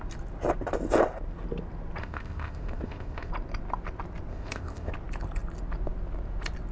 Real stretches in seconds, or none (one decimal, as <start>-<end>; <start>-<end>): 0.0-2.0; 3.3-4.3; 4.9-6.7